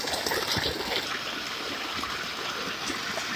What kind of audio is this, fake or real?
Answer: real